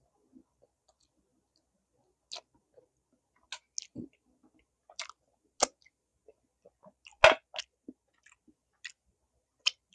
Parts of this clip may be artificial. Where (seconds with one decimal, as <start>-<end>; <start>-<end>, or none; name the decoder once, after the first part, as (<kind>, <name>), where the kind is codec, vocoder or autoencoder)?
none